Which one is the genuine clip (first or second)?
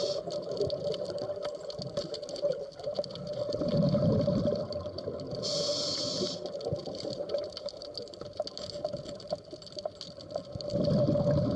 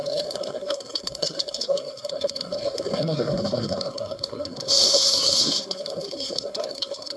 first